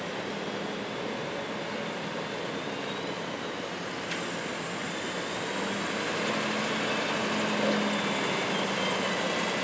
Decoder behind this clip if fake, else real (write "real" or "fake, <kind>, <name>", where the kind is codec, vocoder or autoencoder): real